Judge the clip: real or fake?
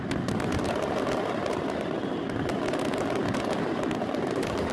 real